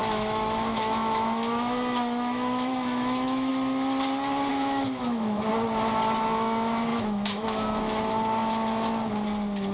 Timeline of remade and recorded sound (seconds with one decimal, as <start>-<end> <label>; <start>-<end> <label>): 0.0-3.5 remade; 3.5-4.5 recorded; 4.5-5.5 remade; 5.5-6.9 recorded; 6.9-8.1 remade; 8.1-9.7 recorded